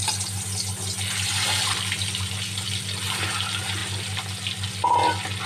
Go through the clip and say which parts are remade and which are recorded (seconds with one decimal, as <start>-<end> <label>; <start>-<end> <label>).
0.0-5.5 recorded